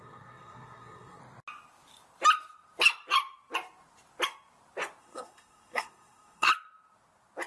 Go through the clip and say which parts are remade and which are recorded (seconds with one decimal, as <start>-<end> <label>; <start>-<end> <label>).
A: 0.0-1.2 remade; 1.2-5.0 recorded; 5.0-6.5 remade; 6.5-7.5 recorded